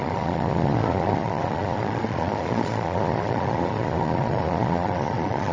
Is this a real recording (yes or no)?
no